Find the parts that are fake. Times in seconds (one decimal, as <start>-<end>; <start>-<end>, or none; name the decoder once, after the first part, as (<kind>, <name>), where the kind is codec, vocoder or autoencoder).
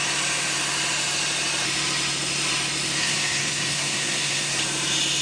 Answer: 3.0-4.5 (codec, SNAC)